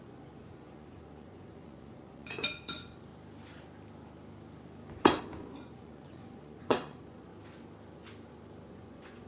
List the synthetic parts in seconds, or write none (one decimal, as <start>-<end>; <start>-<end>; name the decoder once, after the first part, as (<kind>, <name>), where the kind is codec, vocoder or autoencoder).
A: 0.0-3.1 (vocoder, Vocos); 5.2-7.3; 8.7-9.3